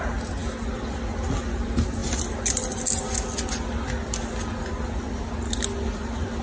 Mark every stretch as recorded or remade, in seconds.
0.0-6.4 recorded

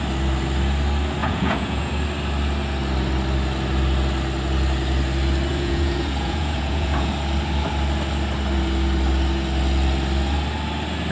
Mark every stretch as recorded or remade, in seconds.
0.0-1.2 recorded; 1.2-1.9 remade; 1.9-5.5 recorded; 5.5-7.1 remade; 7.1-11.1 recorded

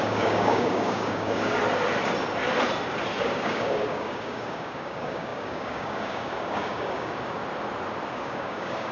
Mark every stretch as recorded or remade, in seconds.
0.0-1.6 remade; 1.6-3.2 recorded; 3.2-7.4 remade; 7.4-8.1 recorded; 8.1-8.9 remade